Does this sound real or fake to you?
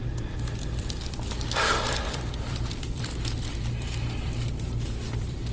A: fake